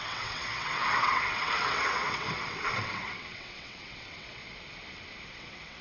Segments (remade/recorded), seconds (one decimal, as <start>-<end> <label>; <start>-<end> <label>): 0.0-4.4 remade; 4.4-5.3 recorded; 5.3-5.8 remade